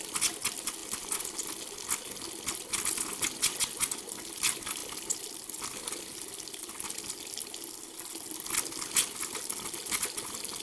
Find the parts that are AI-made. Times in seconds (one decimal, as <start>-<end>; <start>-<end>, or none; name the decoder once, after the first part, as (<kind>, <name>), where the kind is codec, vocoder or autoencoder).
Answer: none